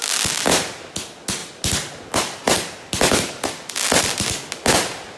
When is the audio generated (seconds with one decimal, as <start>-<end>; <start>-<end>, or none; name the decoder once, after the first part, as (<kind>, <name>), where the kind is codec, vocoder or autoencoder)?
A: none